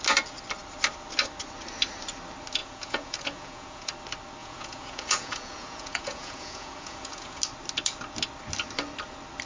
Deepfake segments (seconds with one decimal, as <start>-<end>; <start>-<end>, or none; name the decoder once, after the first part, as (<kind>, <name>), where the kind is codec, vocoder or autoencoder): 2.6-3.9 (vocoder, Vocos); 4.4-7.4

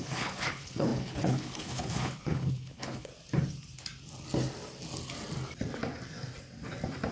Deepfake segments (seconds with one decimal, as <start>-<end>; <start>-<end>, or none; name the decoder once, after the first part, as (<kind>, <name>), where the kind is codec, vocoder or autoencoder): 0.0-3.1 (codec, HILCodec)

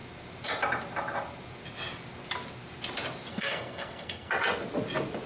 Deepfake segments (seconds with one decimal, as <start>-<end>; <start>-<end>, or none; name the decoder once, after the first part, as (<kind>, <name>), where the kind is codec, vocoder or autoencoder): 3.3-4.3 (codec, SNAC)